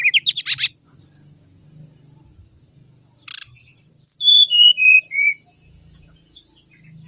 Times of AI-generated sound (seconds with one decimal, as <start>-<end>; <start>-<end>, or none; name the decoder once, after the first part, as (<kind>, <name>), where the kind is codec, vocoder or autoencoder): 4.3-6.4 (vocoder, Vocos)